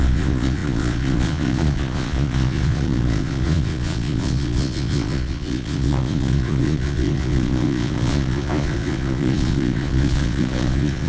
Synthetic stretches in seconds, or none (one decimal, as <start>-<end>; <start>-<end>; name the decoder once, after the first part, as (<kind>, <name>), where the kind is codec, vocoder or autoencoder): 0.0-11.1 (vocoder, Vocos)